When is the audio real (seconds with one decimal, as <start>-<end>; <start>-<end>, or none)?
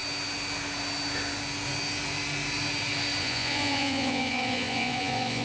0.0-3.2